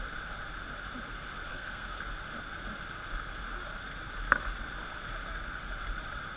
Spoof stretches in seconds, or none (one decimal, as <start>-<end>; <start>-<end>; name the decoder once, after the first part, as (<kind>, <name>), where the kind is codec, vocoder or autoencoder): 1.5-2.0 (codec, SNAC)